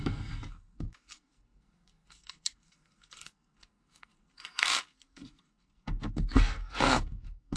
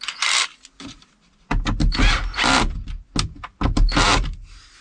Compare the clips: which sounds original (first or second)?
second